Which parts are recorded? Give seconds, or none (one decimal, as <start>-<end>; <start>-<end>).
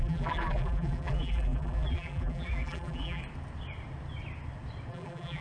3.2-4.9